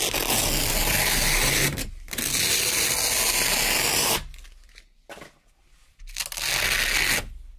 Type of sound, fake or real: real